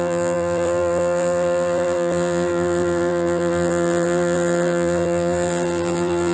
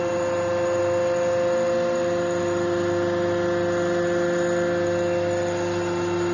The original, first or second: second